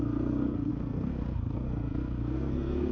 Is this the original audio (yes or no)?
no